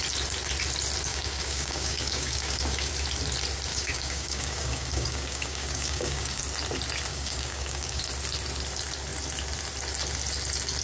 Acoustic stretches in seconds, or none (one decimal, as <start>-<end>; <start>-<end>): 0.0-1.1; 2.9-3.7; 6.4-7.1; 8.0-10.8